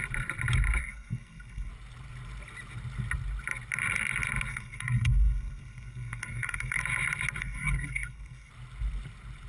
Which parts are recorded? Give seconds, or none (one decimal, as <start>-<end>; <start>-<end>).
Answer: 0.0-0.8; 1.7-4.5; 6.8-7.4; 8.5-9.5